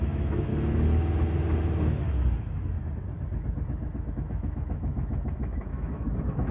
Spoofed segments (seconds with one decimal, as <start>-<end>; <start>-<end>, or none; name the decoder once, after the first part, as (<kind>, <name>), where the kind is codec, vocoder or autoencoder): 0.0-0.5 (autoencoder, DAC-VAE); 4.1-6.5